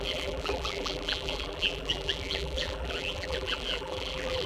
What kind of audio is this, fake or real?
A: fake